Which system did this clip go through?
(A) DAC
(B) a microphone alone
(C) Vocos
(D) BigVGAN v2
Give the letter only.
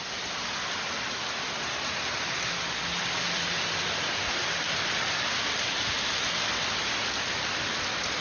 B